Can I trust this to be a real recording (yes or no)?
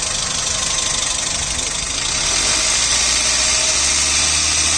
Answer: yes